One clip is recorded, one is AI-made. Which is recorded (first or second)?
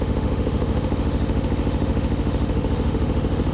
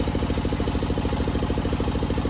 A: second